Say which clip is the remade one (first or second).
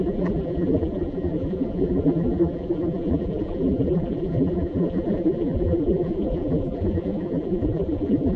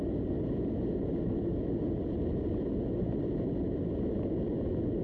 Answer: first